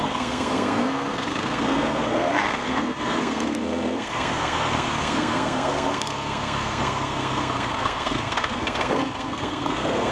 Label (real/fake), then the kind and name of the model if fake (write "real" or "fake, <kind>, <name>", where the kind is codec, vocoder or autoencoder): fake, codec, SNAC